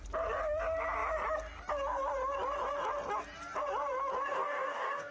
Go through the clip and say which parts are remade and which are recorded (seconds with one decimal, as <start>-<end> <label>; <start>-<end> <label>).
0.0-4.3 recorded; 4.3-5.1 remade